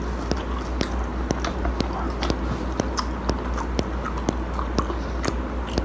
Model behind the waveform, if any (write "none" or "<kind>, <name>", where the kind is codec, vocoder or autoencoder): none